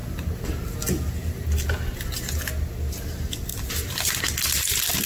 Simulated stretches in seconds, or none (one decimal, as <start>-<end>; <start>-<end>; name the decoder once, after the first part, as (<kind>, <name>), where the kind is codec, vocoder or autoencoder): 3.5-4.2 (vocoder, BigVGAN v2)